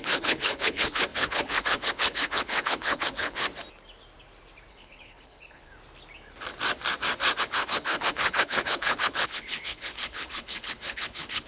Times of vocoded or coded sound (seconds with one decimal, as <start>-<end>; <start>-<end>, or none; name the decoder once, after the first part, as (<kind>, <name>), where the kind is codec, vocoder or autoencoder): 0.0-3.5 (codec, HILCodec); 4.7-5.7; 7.4-11.5